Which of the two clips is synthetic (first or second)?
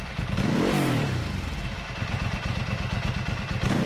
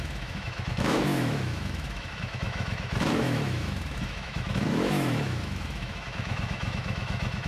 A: second